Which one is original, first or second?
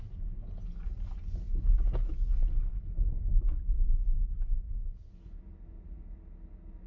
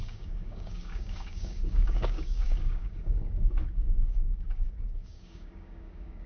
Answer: first